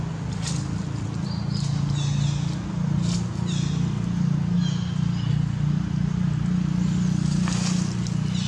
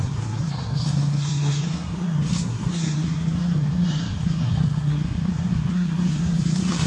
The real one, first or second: first